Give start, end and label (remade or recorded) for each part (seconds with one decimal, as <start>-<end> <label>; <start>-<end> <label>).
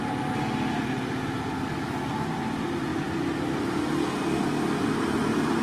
0.0-5.6 recorded